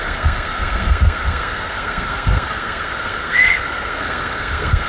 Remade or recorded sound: remade